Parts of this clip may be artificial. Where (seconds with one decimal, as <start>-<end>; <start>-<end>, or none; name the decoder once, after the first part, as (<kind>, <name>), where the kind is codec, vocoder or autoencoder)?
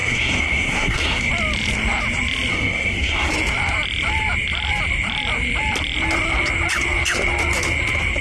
0.0-1.3 (codec, SNAC); 2.5-3.3